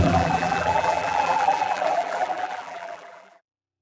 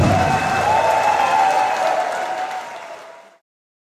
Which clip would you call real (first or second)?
second